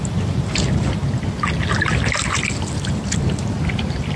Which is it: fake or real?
real